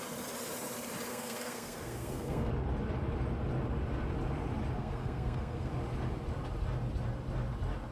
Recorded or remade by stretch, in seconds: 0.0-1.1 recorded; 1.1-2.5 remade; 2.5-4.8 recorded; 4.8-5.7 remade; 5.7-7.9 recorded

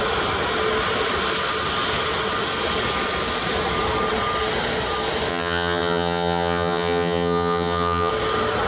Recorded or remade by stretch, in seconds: 0.0-5.3 recorded; 5.3-8.1 remade; 8.1-8.7 recorded

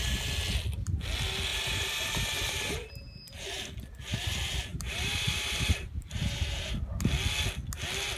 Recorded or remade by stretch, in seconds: 0.0-1.5 recorded; 1.5-2.9 remade; 2.9-4.7 recorded; 4.7-6.7 remade; 6.7-8.2 recorded

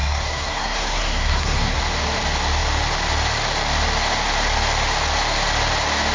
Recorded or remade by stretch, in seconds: 0.0-1.8 remade; 1.8-6.1 recorded

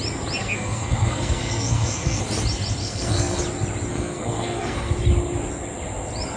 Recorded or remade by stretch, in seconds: 0.0-0.4 recorded; 0.4-2.2 remade; 2.2-2.8 recorded; 2.8-3.4 remade; 3.4-3.9 recorded; 3.9-4.9 remade; 4.9-6.4 recorded